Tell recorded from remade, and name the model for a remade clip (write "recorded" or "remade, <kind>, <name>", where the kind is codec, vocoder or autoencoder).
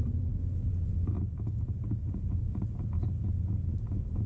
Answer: recorded